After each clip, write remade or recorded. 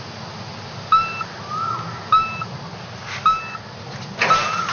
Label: recorded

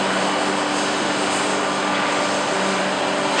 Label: recorded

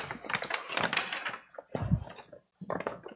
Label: recorded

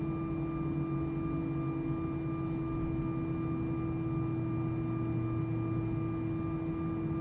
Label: recorded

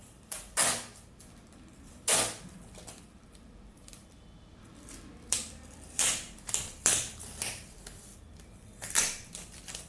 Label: remade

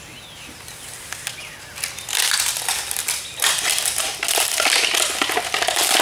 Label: recorded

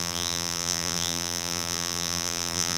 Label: remade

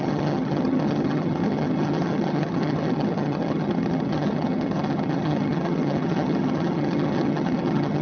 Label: remade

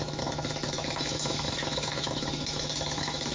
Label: remade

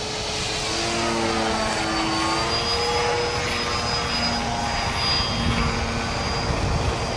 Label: recorded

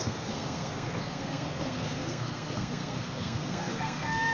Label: remade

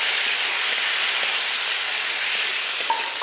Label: recorded